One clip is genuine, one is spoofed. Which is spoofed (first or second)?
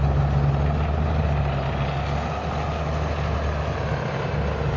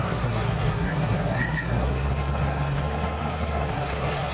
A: second